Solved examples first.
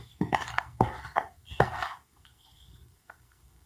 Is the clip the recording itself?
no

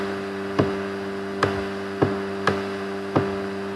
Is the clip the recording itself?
yes